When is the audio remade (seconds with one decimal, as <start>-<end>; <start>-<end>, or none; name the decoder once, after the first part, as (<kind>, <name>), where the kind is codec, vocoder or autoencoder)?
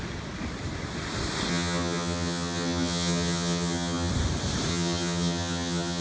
1.5-4.1 (vocoder, HiFi-GAN); 4.7-6.0